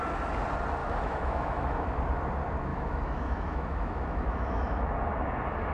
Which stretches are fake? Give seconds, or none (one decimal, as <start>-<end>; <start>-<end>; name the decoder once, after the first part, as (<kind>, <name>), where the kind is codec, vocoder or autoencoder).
0.8-1.9 (autoencoder, DAC-VAE); 2.7-4.9